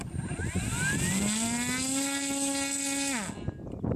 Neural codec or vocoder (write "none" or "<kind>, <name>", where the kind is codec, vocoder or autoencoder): none